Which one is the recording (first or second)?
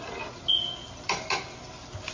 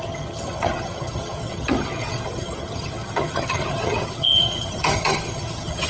first